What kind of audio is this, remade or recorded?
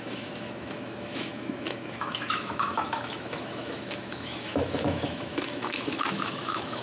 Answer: remade